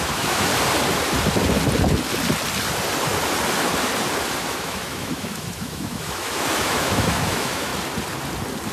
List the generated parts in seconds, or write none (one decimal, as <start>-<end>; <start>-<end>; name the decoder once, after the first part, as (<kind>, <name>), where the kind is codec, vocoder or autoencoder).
0.0-0.5 (autoencoder, DAC-VAE); 4.4-7.7